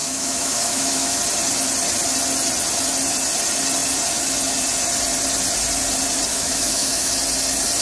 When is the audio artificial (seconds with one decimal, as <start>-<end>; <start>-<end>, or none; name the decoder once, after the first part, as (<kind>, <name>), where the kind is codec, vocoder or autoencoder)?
0.0-1.2 (autoencoder, DAC-VAE); 6.3-7.1